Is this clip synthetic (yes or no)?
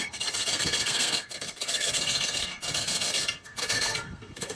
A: yes